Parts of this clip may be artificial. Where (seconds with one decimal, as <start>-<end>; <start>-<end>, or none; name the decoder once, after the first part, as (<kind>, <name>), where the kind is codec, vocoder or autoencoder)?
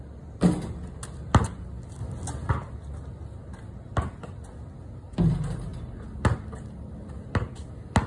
none